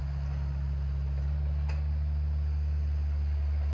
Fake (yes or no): no